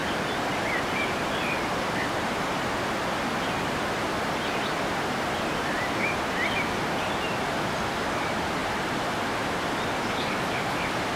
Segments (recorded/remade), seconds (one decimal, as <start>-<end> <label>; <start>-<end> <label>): 0.0-11.2 remade